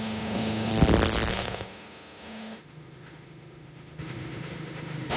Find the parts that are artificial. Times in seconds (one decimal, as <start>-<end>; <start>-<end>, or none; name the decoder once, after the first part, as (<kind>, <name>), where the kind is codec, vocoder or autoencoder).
0.0-0.7 (autoencoder, DAC-VAE); 1.3-5.2